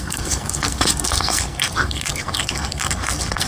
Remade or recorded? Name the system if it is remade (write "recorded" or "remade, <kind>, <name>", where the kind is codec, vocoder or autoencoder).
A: remade, codec, SNAC